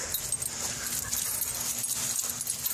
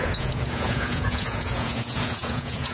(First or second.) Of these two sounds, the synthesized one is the second